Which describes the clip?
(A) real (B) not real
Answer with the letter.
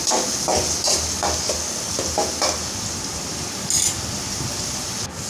A